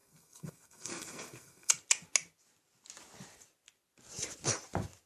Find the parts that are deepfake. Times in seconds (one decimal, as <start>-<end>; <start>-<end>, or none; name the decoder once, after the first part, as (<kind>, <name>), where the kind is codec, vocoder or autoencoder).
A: 0.0-1.7 (codec, SNAC)